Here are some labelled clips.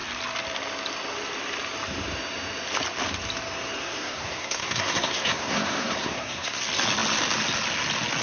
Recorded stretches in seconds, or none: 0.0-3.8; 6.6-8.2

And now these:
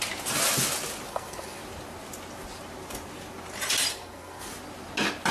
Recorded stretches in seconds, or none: 0.0-1.1; 1.6-3.9; 4.5-5.3

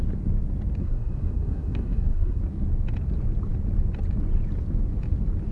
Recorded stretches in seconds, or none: 0.0-0.8; 2.4-5.5

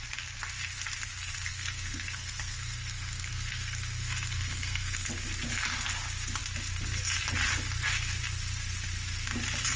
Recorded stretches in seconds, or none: 0.0-1.5; 5.1-9.8

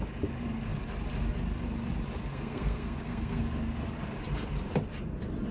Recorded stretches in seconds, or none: 0.0-2.3; 3.4-5.5

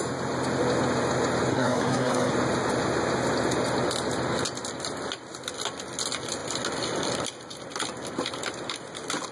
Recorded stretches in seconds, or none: 0.0-1.5; 2.3-9.3

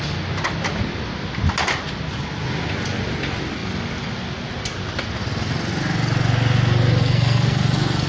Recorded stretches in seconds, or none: 0.0-7.0

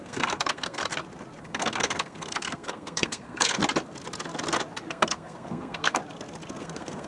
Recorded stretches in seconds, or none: 0.8-1.4; 3.6-4.9; 6.0-6.6